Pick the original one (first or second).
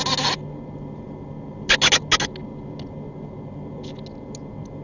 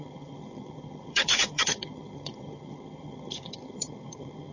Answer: first